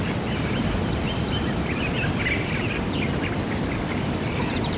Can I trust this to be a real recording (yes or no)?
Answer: no